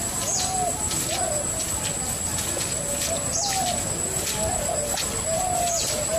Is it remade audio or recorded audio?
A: recorded